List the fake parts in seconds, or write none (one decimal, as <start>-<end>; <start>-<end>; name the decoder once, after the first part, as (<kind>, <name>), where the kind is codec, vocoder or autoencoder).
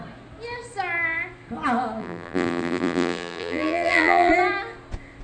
2.0-4.3 (vocoder, BigVGAN v2)